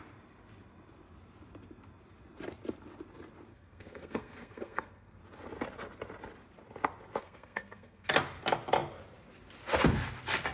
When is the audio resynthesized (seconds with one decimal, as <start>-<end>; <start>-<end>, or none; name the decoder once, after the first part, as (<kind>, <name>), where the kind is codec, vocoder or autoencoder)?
3.5-5.2 (codec, SNAC); 7.2-8.1

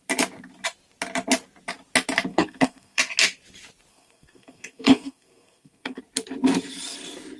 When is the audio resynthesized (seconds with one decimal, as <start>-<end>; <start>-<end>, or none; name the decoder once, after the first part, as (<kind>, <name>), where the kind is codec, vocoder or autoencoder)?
2.3-3.0 (codec, SNAC); 3.9-6.0

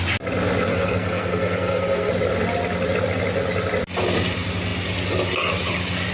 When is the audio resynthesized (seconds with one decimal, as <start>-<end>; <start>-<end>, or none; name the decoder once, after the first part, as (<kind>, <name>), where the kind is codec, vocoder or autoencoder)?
0.7-2.1 (codec, SNAC)

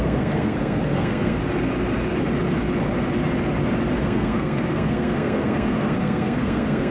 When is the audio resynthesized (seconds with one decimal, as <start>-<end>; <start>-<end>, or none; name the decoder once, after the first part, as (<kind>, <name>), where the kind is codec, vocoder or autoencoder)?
0.0-1.4 (codec, SNAC); 4.0-6.9